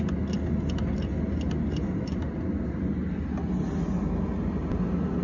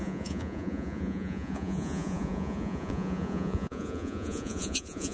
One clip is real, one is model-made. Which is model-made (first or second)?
second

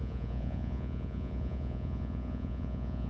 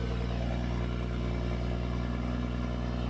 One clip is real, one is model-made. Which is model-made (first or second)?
first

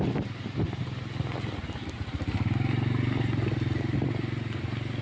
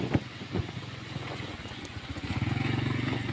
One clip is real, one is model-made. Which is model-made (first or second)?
second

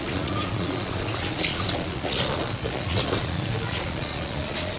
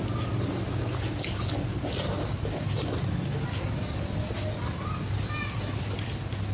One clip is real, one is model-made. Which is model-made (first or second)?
first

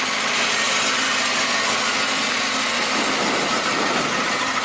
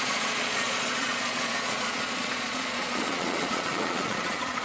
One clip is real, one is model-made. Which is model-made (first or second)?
second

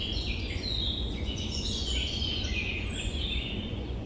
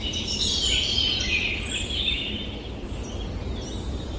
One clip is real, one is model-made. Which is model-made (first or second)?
first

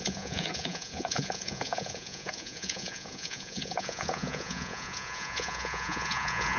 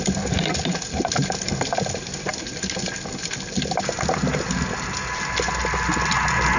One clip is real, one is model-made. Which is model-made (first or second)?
first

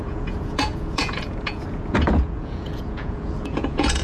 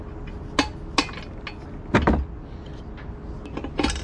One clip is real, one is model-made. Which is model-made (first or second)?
first